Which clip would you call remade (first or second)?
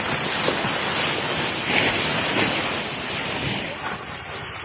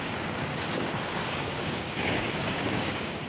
second